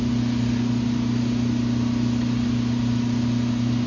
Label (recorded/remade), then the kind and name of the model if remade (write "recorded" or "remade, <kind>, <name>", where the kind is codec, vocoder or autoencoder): recorded